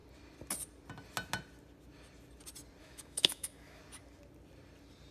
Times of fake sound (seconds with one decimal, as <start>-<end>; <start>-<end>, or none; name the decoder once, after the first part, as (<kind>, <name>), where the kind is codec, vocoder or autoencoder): 2.8-3.8 (autoencoder, DAC-VAE)